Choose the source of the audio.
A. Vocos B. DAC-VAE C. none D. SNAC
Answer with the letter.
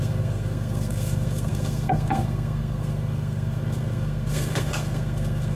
D